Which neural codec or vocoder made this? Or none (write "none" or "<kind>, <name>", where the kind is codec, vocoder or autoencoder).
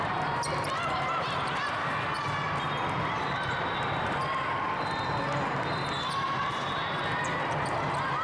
none